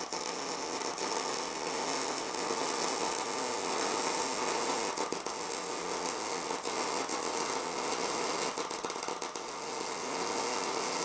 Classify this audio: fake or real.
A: real